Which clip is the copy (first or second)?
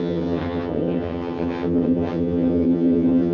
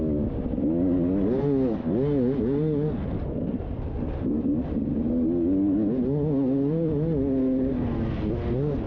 first